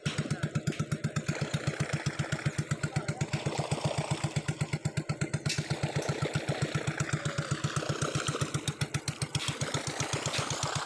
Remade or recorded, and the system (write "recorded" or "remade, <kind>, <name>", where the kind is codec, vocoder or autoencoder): recorded